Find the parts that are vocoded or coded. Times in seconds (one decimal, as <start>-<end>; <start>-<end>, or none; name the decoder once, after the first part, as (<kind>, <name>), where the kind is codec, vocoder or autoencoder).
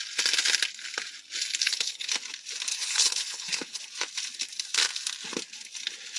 1.6-2.1 (codec, HILCodec); 2.7-3.8